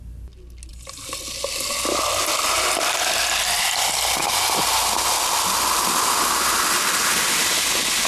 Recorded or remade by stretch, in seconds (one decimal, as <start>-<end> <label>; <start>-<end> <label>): 0.0-8.1 recorded